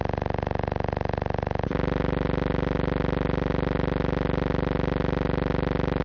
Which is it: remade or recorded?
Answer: recorded